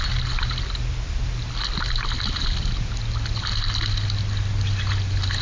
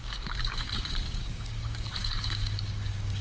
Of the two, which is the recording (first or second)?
first